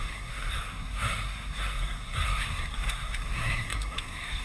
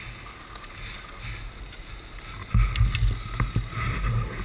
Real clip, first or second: second